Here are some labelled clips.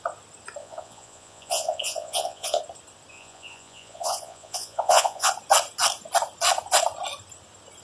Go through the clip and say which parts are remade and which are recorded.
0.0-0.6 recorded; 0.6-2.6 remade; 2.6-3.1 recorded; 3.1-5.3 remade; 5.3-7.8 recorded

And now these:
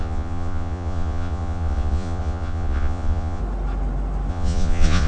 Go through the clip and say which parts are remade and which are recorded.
0.0-3.4 remade; 3.4-4.3 recorded; 4.3-5.1 remade

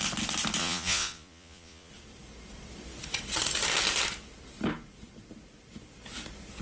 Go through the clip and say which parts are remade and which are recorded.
0.0-0.6 recorded; 0.6-1.9 remade; 1.9-6.6 recorded

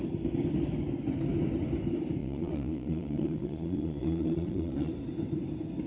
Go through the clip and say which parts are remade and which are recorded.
0.0-2.2 recorded; 2.2-4.9 remade; 4.9-5.9 recorded

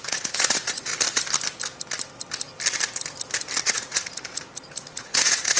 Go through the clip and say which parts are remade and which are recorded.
0.0-0.9 remade; 0.9-3.6 recorded; 3.6-5.6 remade